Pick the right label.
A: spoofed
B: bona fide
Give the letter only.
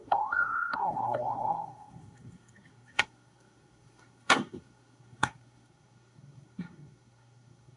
A